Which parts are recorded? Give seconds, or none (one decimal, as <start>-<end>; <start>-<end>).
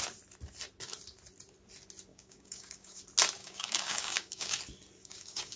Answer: 0.0-2.1; 3.0-3.4; 4.6-5.0